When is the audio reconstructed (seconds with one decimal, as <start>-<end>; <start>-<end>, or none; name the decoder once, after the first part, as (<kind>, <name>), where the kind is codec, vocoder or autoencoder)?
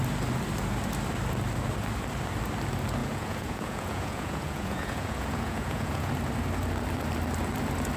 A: 3.0-6.1 (vocoder, Vocos)